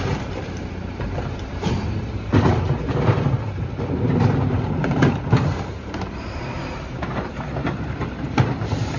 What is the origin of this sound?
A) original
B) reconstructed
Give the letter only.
B